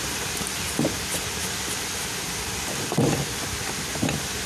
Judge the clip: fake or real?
real